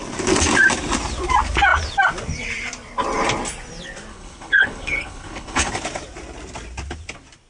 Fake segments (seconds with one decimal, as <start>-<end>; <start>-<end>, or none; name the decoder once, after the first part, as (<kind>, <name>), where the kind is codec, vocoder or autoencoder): 4.1-5.7 (codec, HILCodec)